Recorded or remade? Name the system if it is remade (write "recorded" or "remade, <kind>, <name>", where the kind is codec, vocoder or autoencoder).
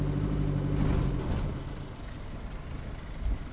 recorded